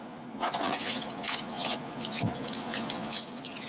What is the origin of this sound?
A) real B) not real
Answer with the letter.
B